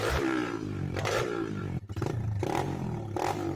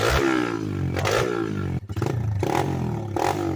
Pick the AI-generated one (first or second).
first